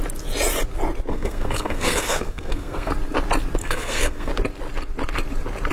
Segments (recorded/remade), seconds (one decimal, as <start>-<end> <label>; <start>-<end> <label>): 0.0-1.1 recorded; 1.1-2.9 remade; 2.9-3.6 recorded; 3.6-4.3 remade; 4.3-5.7 recorded